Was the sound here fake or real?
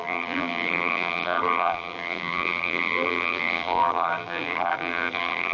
fake